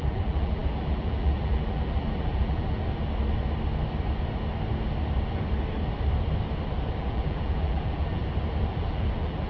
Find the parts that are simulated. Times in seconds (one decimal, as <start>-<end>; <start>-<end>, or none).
0.0-2.8; 7.0-8.2; 8.7-9.5

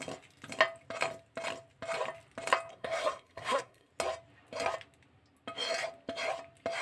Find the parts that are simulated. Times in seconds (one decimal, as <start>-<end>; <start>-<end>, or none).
2.7-3.9

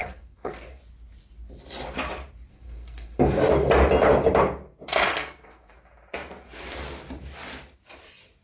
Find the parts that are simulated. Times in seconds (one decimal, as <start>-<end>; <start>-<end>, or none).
0.0-0.8; 2.5-3.2; 5.1-5.7

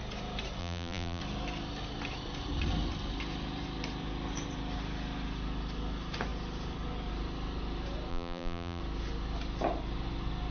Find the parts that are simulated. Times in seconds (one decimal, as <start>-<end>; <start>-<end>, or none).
0.6-1.2; 8.1-8.8

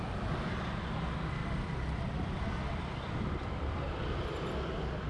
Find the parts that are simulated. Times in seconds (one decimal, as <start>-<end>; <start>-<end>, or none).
1.4-4.5

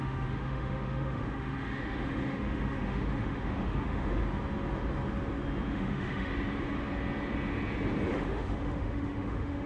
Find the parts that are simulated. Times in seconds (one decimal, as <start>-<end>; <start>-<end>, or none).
0.0-4.2; 5.7-6.3; 8.2-9.7

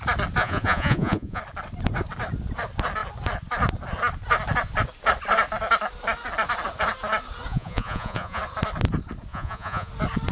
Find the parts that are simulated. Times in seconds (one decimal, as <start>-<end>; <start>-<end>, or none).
0.4-1.4; 7.5-8.4; 9.3-9.9